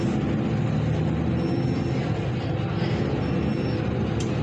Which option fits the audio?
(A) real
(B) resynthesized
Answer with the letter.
A